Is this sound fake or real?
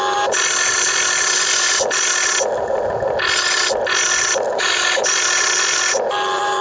real